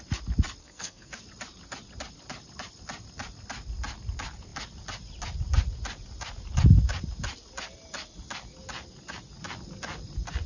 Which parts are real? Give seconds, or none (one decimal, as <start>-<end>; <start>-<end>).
0.0-0.6; 1.2-10.5